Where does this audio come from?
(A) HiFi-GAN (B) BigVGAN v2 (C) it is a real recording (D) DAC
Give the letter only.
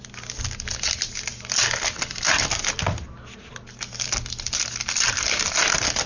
C